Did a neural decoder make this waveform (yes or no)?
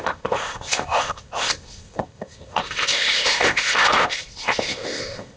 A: yes